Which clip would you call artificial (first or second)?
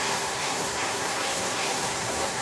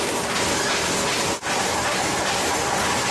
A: first